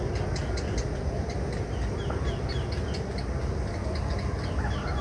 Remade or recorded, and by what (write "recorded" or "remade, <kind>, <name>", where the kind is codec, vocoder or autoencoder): recorded